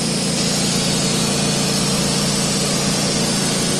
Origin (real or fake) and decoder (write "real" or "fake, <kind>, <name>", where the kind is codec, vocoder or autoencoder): real